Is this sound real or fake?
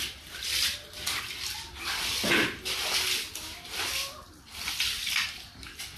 real